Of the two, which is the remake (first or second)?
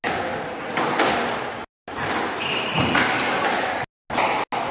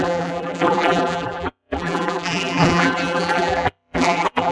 second